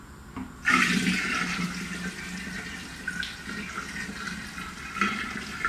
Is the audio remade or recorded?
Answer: recorded